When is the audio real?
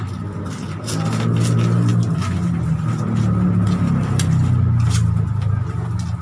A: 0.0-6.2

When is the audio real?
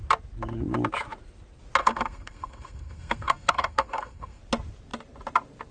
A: 0.0-1.8; 4.4-5.7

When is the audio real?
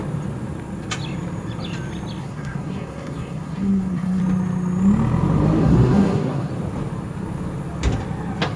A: 0.0-2.2; 4.2-5.6; 6.5-8.6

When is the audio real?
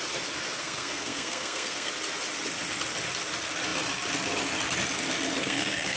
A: 0.0-0.6; 1.9-5.4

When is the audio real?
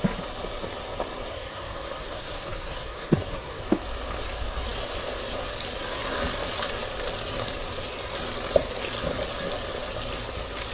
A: 0.0-1.3; 3.6-10.7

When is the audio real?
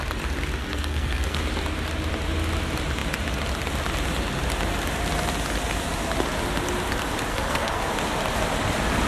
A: 0.0-0.6; 1.4-7.3; 7.9-9.1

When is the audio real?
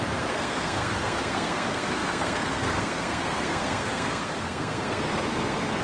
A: none